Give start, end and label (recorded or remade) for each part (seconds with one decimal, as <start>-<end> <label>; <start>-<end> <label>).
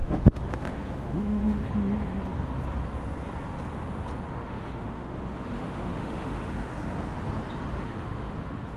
0.0-1.6 remade; 1.6-4.3 recorded; 4.3-6.7 remade; 6.7-7.7 recorded; 7.7-8.8 remade